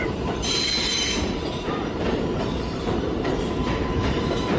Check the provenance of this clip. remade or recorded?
remade